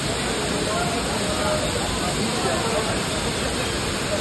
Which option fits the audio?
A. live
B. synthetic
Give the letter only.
A